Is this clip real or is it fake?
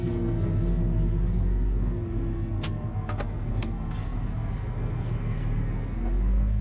fake